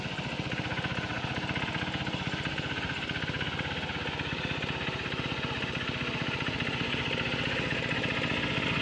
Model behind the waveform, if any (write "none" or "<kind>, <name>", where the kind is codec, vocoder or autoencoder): none